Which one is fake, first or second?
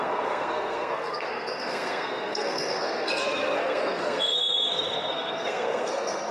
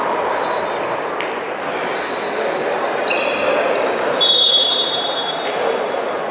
first